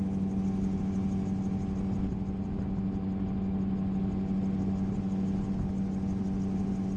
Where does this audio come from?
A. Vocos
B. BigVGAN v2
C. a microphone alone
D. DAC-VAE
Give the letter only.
C